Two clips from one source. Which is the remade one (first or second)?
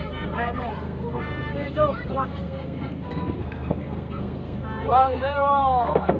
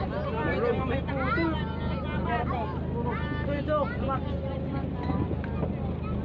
first